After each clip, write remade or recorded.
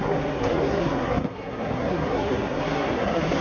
remade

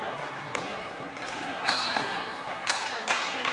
remade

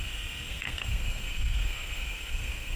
remade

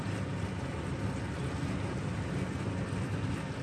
recorded